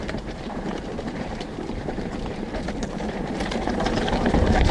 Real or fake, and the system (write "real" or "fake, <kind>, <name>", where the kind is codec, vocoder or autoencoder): fake, vocoder, BigVGAN v2